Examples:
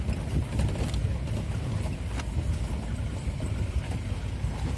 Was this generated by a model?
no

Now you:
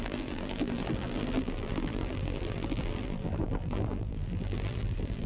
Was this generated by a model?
yes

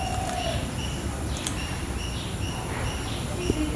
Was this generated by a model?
no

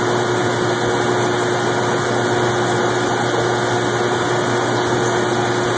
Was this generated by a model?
no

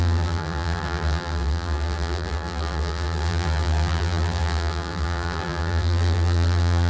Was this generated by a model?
yes